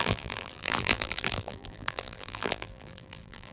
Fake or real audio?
fake